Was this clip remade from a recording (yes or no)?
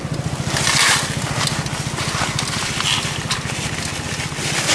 no